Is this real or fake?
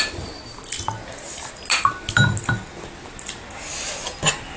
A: real